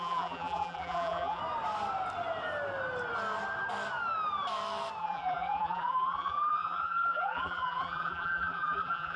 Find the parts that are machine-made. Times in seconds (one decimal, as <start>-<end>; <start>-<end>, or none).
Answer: 0.0-1.4; 5.0-9.2